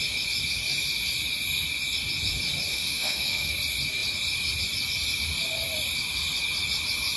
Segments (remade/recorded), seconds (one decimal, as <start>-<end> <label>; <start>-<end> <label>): 0.0-2.7 recorded; 2.7-3.5 remade; 3.5-7.2 recorded